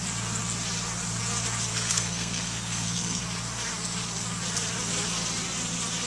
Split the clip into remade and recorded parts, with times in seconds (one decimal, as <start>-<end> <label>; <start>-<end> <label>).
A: 0.0-1.7 recorded; 1.7-3.2 remade; 3.2-6.1 recorded